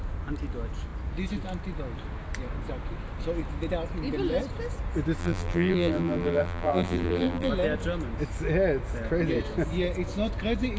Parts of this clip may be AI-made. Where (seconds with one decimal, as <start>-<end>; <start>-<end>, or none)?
5.2-7.5